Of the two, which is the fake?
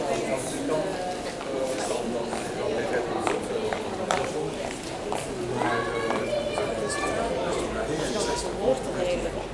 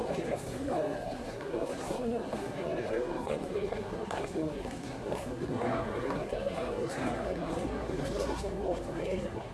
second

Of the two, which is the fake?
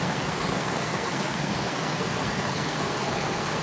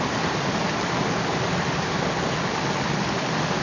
first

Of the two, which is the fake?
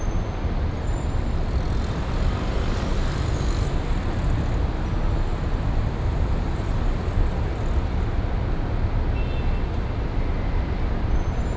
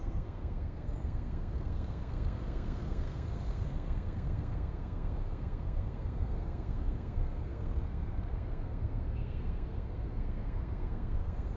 second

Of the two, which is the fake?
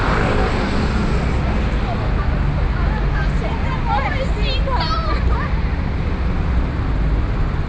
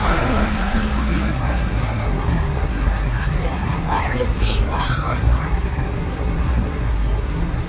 second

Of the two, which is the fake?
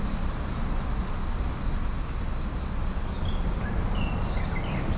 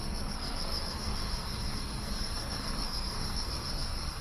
second